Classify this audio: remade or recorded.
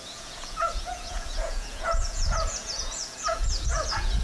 remade